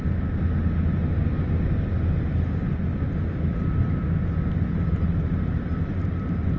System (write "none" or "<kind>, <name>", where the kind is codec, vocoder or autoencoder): none